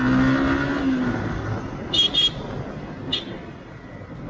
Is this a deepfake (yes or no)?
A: no